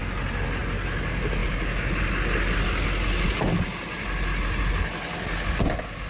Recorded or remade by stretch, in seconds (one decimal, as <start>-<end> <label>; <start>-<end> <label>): 0.0-6.1 recorded